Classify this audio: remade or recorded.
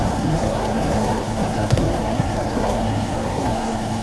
remade